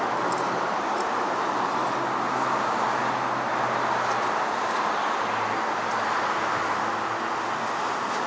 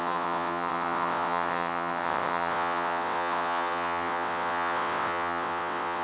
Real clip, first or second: first